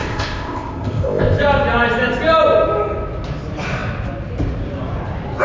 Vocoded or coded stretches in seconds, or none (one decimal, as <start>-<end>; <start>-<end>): 0.0-1.4